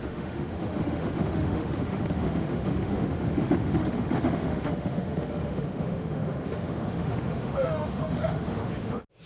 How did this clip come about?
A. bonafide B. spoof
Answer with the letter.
B